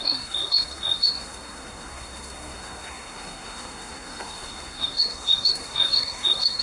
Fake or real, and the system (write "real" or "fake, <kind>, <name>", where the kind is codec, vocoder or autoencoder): fake, codec, SNAC